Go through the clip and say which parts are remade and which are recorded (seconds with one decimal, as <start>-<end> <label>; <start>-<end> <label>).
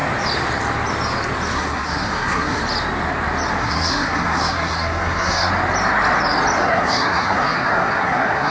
0.0-1.5 recorded; 1.5-2.6 remade; 2.6-3.6 recorded; 3.6-5.5 remade; 5.5-6.6 recorded; 6.6-8.5 remade